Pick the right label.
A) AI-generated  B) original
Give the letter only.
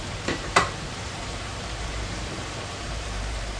A